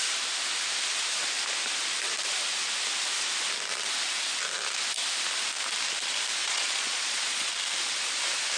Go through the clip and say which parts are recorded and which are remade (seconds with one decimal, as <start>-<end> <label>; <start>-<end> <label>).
0.0-6.4 recorded; 6.4-7.5 remade; 7.5-8.6 recorded